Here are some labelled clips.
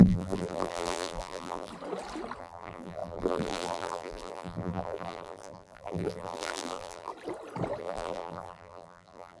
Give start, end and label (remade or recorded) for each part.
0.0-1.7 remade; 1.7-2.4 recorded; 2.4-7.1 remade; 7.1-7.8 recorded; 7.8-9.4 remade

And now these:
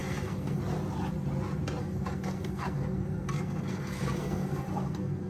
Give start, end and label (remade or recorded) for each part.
0.0-0.6 remade; 0.6-1.8 recorded; 1.8-5.3 remade

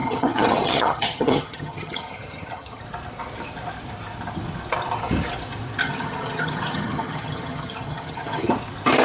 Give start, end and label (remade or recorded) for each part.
0.0-2.8 remade; 2.8-5.8 recorded; 5.8-8.5 remade; 8.5-9.0 recorded

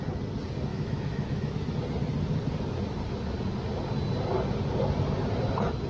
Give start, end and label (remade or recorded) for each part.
0.0-0.7 recorded; 0.7-1.7 remade; 1.7-5.9 recorded

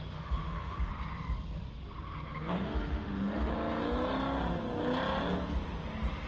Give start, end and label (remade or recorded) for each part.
0.0-0.9 remade; 0.9-2.5 recorded; 2.5-3.5 remade; 3.5-6.3 recorded

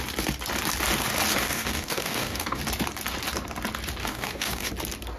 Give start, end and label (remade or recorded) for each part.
0.0-1.3 recorded; 1.3-2.6 remade; 2.6-4.0 recorded; 4.0-4.7 remade; 4.7-5.2 recorded

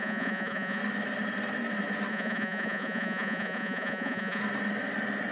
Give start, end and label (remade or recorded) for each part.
0.0-0.8 remade; 0.8-2.1 recorded; 2.1-4.4 remade; 4.4-5.3 recorded

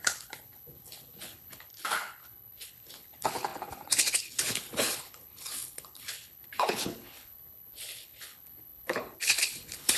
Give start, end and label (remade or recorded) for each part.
0.0-10.0 remade